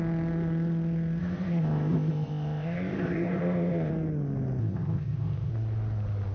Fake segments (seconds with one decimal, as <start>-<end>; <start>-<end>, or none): 1.2-3.9; 4.6-5.5